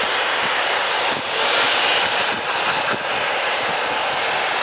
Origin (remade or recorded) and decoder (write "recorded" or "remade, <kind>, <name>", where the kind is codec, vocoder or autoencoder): recorded